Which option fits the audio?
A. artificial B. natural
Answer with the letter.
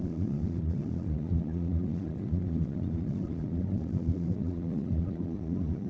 A